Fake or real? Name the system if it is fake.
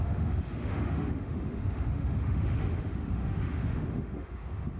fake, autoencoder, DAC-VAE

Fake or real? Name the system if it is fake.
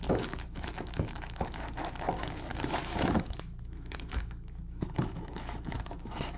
fake, autoencoder, DAC-VAE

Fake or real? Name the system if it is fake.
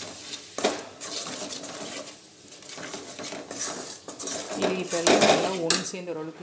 real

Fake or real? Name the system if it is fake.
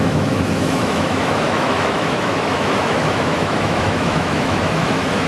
fake, autoencoder, DAC-VAE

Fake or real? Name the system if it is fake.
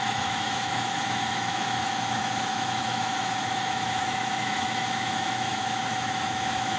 fake, autoencoder, DAC-VAE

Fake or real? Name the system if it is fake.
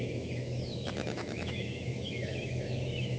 fake, autoencoder, DAC-VAE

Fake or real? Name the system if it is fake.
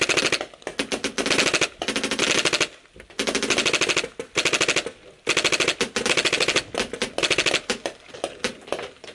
real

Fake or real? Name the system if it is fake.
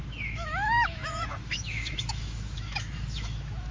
fake, autoencoder, DAC-VAE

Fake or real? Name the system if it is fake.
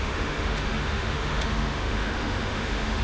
fake, autoencoder, DAC-VAE